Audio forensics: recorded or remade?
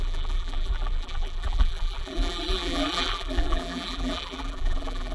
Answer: remade